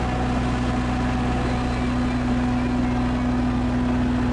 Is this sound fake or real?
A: real